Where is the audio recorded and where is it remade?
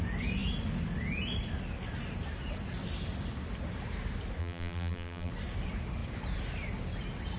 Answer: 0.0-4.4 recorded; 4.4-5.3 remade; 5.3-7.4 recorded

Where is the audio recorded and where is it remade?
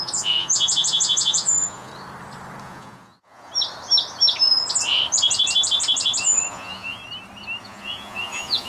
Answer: 0.0-1.9 remade; 1.9-2.6 recorded; 2.6-3.5 remade; 3.5-6.2 recorded; 6.2-7.0 remade; 7.0-7.6 recorded; 7.6-8.7 remade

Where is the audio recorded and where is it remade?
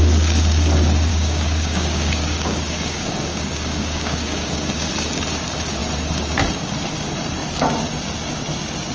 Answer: 0.0-1.1 recorded; 1.1-4.9 remade; 4.9-8.9 recorded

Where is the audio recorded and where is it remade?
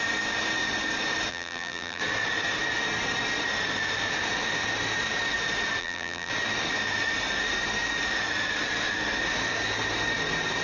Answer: 0.0-1.3 recorded; 1.3-2.0 remade; 2.0-5.8 recorded; 5.8-6.3 remade; 6.3-10.6 recorded